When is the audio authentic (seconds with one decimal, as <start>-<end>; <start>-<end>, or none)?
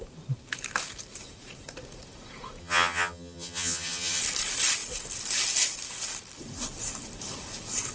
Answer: 0.0-2.6; 4.2-7.9